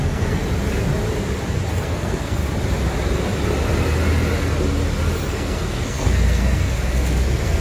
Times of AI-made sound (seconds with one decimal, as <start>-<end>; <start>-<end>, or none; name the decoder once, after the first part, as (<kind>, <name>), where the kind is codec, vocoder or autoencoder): 0.0-0.4 (codec, SNAC); 1.7-2.4; 5.3-7.6